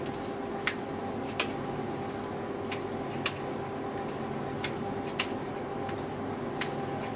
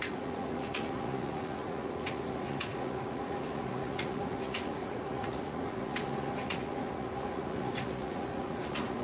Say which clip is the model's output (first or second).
second